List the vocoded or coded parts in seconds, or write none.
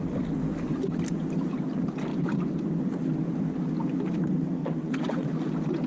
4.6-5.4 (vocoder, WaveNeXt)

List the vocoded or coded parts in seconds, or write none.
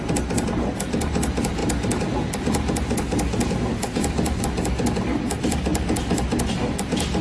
none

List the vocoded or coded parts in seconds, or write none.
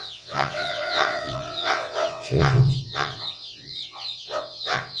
0.0-5.0 (vocoder, WaveNeXt)